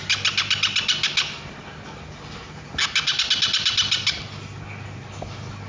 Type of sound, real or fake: real